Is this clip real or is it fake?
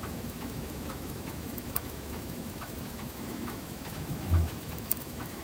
fake